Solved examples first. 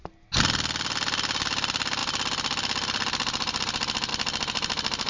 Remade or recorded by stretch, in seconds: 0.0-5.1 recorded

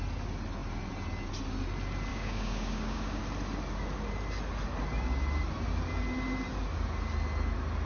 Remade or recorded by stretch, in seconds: 0.0-2.1 recorded; 2.1-3.2 remade; 3.2-7.9 recorded

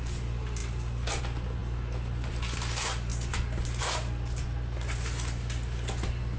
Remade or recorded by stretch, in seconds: 0.0-6.4 recorded

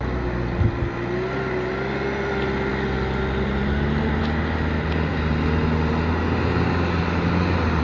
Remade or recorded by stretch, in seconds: 0.0-7.8 recorded

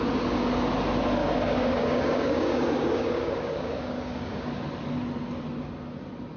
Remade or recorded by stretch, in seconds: 0.0-1.2 recorded; 1.2-4.5 remade; 4.5-6.4 recorded

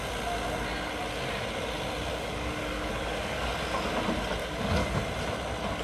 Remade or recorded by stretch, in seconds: 0.0-2.1 recorded; 2.1-3.5 remade; 3.5-4.4 recorded; 4.4-5.0 remade; 5.0-5.8 recorded

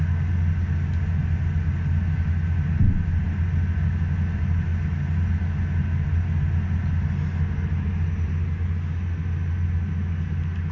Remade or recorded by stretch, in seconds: 0.0-10.7 recorded

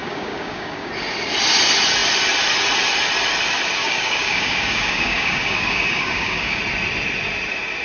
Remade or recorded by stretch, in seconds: 0.0-0.9 remade; 0.9-3.8 recorded; 3.8-6.6 remade; 6.6-7.8 recorded